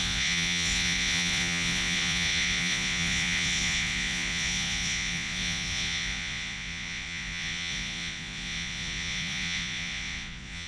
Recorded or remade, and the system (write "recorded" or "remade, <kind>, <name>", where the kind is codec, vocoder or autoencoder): remade, vocoder, Vocos